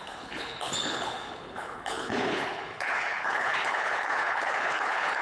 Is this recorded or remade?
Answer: remade